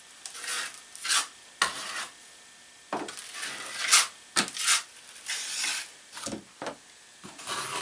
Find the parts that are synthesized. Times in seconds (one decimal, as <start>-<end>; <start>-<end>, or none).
none